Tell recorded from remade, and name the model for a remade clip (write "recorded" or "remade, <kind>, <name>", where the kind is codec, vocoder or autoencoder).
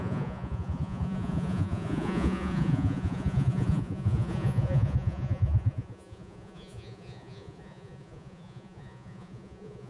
remade, vocoder, Vocos